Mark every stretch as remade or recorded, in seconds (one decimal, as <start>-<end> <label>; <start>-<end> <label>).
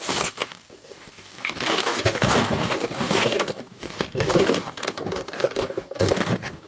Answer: 0.0-6.7 remade